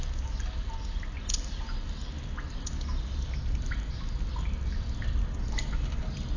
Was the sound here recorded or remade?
recorded